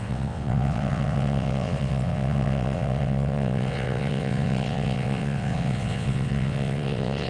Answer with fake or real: fake